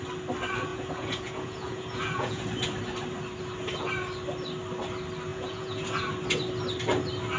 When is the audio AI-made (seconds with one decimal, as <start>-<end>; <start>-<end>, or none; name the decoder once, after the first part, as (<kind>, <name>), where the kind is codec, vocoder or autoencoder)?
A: 0.7-2.4 (vocoder, Vocos); 5.3-6.0